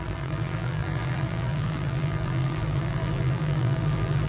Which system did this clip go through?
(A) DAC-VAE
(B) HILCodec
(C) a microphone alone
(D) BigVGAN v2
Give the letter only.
D